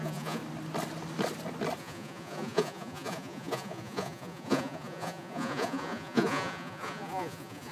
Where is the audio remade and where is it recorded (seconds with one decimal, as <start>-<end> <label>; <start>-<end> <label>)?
0.0-0.4 remade; 0.4-1.8 recorded; 1.8-7.7 remade